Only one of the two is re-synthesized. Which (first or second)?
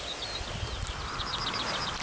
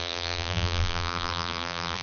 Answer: second